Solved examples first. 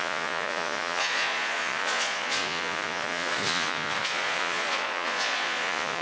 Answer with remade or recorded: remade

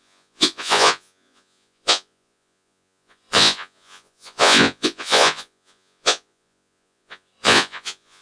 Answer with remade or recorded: remade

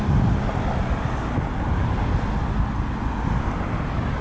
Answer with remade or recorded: recorded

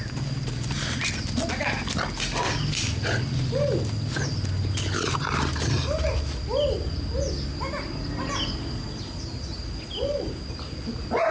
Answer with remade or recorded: recorded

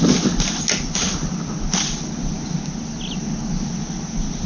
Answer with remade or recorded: recorded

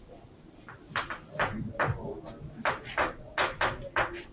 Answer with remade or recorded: recorded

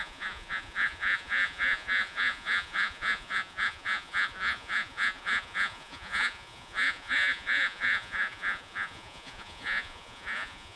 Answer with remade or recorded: remade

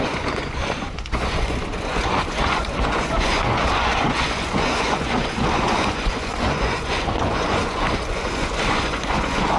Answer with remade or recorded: remade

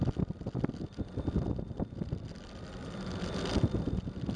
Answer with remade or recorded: recorded